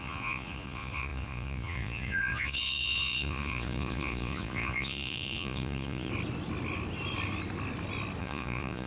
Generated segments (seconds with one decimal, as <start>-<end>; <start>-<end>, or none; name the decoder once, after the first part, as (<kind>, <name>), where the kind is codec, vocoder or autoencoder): 0.0-6.1 (vocoder, Vocos); 8.2-8.9